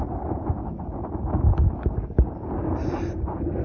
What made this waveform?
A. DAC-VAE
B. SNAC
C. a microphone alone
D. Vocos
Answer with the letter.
C